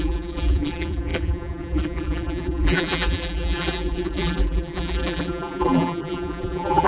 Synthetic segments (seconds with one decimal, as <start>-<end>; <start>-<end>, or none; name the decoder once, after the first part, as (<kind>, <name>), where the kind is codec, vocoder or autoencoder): 0.0-6.9 (vocoder, BigVGAN v2)